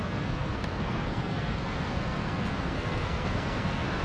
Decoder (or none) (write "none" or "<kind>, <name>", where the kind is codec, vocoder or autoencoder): codec, SNAC